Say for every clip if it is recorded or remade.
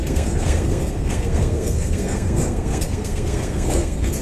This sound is remade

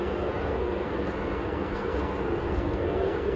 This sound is remade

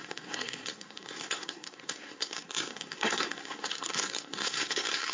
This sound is remade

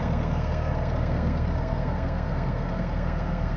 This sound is remade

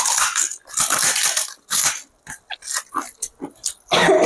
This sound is recorded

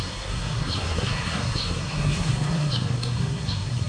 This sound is remade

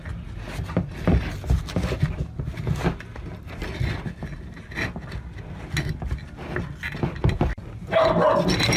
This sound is recorded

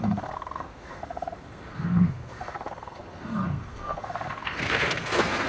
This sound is remade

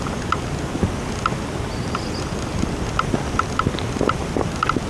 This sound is recorded